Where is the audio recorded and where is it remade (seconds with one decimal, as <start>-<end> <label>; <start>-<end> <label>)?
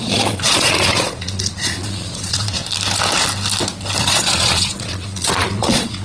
0.0-2.6 remade; 2.6-4.0 recorded; 4.0-6.0 remade